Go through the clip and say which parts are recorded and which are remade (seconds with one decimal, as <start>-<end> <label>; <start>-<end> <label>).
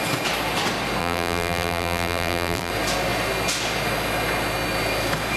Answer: 0.0-1.0 recorded; 1.0-2.7 remade; 2.7-5.4 recorded